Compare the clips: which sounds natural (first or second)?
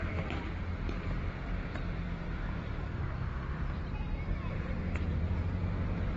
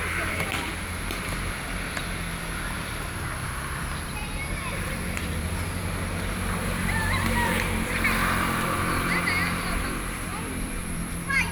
second